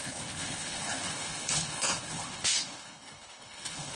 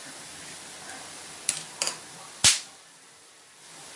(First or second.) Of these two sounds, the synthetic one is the first